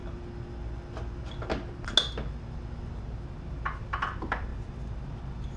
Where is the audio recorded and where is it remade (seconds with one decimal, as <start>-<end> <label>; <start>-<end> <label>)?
0.0-5.6 recorded